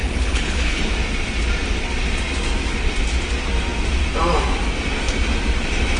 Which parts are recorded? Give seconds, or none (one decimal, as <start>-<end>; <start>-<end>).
0.8-6.0